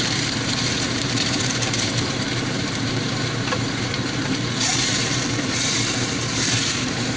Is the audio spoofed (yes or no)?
yes